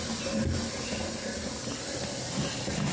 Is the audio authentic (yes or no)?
yes